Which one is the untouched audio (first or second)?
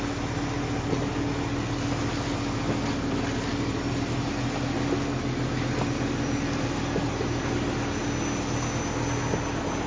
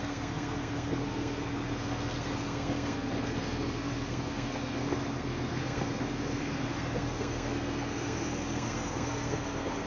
first